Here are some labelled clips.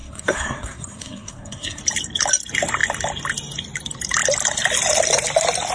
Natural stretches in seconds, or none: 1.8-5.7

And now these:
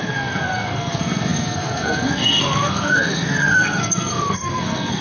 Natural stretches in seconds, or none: none

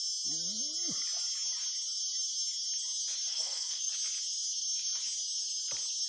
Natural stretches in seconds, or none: 0.0-3.3; 3.9-6.1